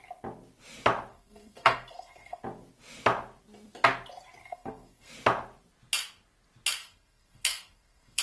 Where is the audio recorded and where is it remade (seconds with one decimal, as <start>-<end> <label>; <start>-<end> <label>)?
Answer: 0.0-1.1 recorded; 1.1-2.4 remade; 2.4-4.4 recorded; 4.4-5.1 remade; 5.1-6.8 recorded; 6.8-8.2 remade